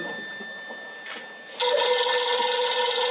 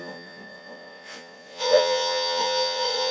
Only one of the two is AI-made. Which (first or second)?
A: second